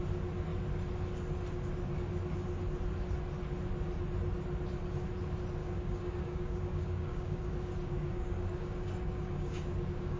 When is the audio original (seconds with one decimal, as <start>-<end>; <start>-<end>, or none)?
0.0-5.6